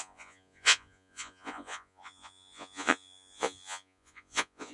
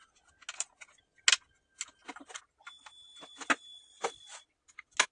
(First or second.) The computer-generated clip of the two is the first